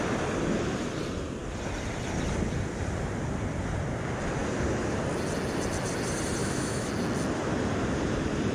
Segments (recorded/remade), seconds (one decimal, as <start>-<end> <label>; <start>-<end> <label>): 0.0-6.4 recorded; 6.4-6.9 remade; 6.9-8.5 recorded